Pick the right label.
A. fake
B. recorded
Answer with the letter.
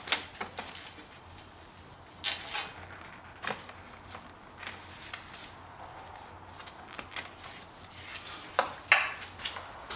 B